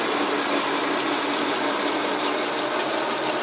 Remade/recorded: recorded